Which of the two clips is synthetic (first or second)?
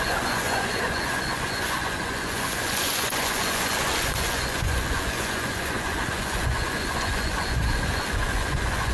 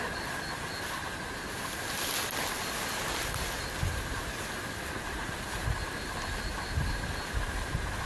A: first